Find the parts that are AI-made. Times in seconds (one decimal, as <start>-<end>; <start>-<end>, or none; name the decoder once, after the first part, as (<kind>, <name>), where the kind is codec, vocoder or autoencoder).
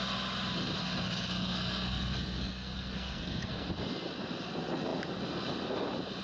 0.8-3.7 (codec, SNAC)